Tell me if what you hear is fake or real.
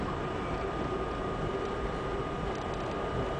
real